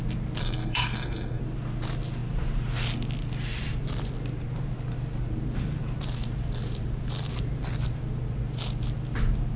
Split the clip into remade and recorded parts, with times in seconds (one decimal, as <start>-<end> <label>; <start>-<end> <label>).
0.0-0.4 recorded; 0.4-1.4 remade; 1.4-9.6 recorded